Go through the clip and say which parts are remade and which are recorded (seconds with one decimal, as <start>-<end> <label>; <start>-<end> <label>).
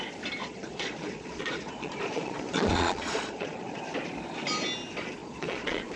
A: 0.0-0.4 recorded; 0.4-3.8 remade; 3.8-5.2 recorded; 5.2-6.0 remade